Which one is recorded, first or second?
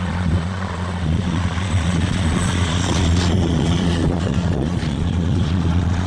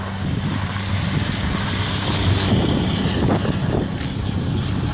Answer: second